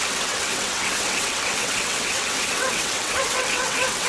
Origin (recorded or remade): remade